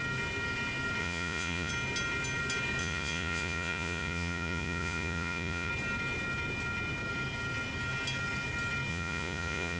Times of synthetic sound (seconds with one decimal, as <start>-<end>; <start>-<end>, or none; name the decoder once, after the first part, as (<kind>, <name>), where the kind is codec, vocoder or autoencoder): 1.0-1.7 (vocoder, Vocos); 2.8-5.7; 8.9-9.8